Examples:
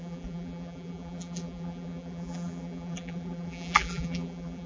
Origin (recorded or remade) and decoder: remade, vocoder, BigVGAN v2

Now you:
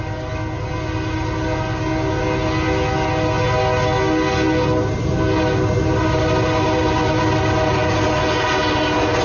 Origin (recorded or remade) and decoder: recorded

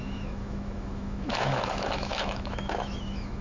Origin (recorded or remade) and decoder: remade, autoencoder, DAC-VAE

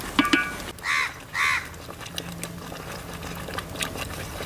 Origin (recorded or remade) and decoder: recorded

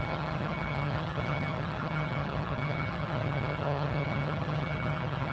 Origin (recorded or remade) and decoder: remade, vocoder, HiFi-GAN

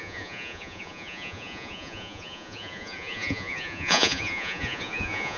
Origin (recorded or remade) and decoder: remade, vocoder, Vocos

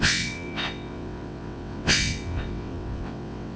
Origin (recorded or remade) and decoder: remade, vocoder, WaveNeXt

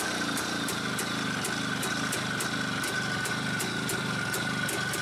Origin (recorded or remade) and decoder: recorded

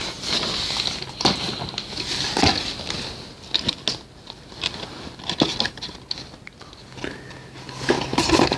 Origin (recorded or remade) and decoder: recorded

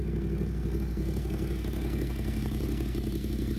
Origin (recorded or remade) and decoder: remade, codec, SNAC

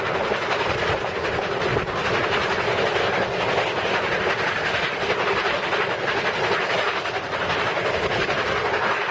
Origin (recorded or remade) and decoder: recorded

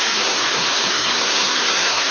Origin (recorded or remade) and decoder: remade, codec, SNAC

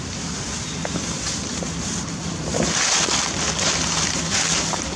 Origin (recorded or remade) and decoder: recorded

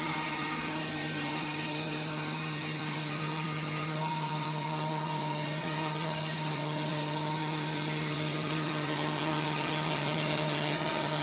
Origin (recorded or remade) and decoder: remade, vocoder, HiFi-GAN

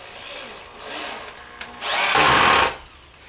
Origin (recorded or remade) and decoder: recorded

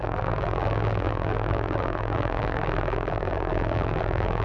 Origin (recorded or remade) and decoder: remade, vocoder, BigVGAN v2